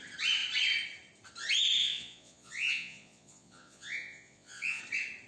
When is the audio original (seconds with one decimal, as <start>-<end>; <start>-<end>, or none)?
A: 0.0-1.8; 4.8-5.3